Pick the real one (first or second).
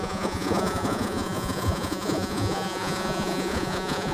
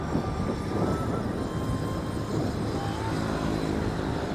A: second